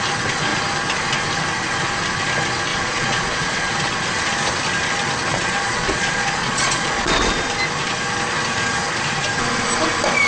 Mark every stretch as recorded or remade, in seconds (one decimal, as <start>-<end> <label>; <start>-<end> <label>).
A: 0.0-2.7 recorded; 2.7-3.7 remade; 3.7-5.3 recorded; 5.3-7.1 remade; 7.1-10.3 recorded